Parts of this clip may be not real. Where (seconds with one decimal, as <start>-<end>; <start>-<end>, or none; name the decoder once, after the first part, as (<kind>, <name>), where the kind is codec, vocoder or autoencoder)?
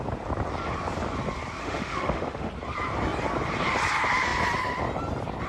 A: 1.6-2.5 (autoencoder, DAC-VAE)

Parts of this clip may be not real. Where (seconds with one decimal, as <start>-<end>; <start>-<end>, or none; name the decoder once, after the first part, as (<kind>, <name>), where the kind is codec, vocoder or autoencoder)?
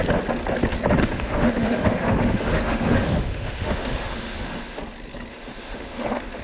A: 1.0-4.8 (autoencoder, DAC-VAE); 5.3-6.4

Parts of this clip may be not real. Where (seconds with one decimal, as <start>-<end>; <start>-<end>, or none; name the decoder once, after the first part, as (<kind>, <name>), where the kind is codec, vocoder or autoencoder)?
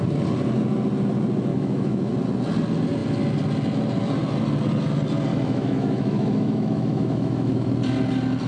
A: 1.5-2.1 (autoencoder, DAC-VAE); 5.3-7.7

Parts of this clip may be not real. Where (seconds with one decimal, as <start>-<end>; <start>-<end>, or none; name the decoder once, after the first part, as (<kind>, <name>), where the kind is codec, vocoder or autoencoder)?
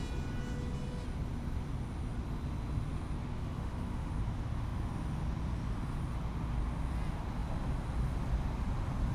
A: 3.3-4.1 (autoencoder, DAC-VAE)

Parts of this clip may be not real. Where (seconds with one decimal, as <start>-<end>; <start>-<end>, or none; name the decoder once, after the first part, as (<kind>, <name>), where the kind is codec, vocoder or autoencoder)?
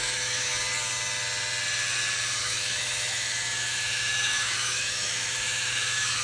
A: 0.0-0.5 (autoencoder, DAC-VAE); 2.4-6.2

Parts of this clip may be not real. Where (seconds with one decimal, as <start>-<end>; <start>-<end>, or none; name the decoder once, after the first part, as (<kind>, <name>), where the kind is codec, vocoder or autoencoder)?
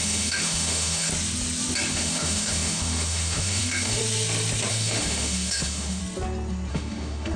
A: 0.0-1.1 (autoencoder, DAC-VAE); 1.9-4.0; 4.7-6.0; 6.7-7.4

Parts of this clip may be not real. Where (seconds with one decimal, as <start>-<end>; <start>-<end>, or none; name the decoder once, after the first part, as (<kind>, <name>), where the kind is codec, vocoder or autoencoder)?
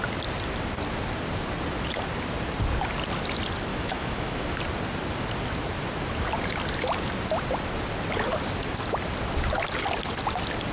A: 3.7-4.5 (autoencoder, DAC-VAE)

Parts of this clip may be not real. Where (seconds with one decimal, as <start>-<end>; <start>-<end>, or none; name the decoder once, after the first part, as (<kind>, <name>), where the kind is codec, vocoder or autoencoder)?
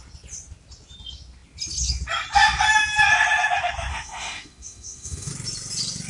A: 3.9-5.3 (autoencoder, DAC-VAE)